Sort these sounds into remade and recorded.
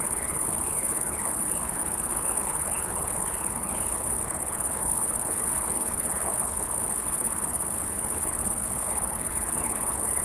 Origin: remade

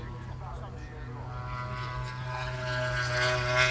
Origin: recorded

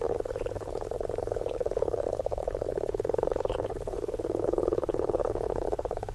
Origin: remade